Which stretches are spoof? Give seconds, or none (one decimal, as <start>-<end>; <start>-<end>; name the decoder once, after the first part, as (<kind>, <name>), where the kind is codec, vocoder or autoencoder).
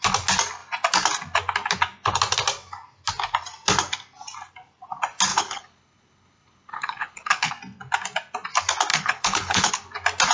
5.3-7.5 (codec, HILCodec); 8.9-9.7